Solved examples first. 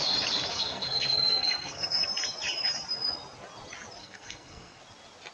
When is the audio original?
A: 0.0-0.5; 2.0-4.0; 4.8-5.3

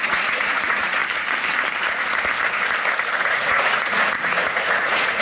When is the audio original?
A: 1.0-3.2

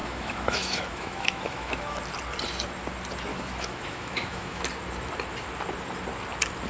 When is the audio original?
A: 2.0-3.3; 4.6-6.7

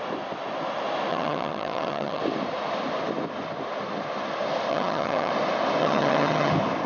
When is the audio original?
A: 0.0-1.1; 2.2-4.7; 5.3-5.8; 6.5-6.9

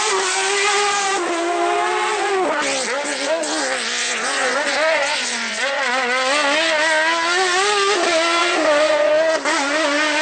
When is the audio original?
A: 0.0-4.0; 5.8-8.4; 9.1-10.2

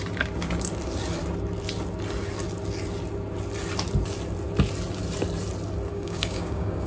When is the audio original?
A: 0.0-5.9

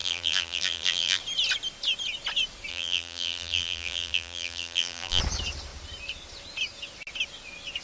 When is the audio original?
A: 1.2-2.7; 5.2-7.8

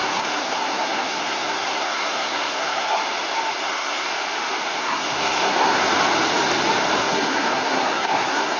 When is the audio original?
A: 3.0-3.6; 4.1-4.8; 5.8-7.0